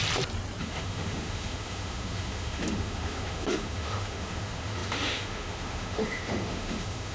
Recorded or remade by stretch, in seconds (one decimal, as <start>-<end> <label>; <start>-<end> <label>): 0.0-0.6 recorded; 0.6-7.1 remade